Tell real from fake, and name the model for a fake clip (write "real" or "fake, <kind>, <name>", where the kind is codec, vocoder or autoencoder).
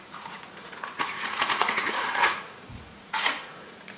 fake, vocoder, Vocos